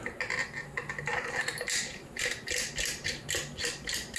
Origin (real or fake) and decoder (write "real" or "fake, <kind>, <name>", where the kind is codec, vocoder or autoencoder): real